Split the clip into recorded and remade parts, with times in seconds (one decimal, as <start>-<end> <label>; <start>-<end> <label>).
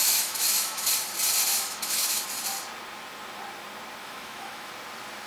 0.0-0.9 remade; 0.9-1.5 recorded; 1.5-2.2 remade; 2.2-4.0 recorded; 4.0-4.7 remade; 4.7-5.3 recorded